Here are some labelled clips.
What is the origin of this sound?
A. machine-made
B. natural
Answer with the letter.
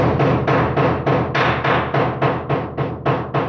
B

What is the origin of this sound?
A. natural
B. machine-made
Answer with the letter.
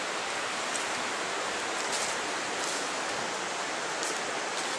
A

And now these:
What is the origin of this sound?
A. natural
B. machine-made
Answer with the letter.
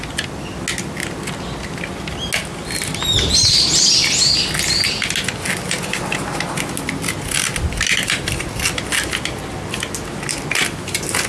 A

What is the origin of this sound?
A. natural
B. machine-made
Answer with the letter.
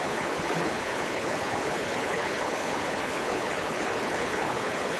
B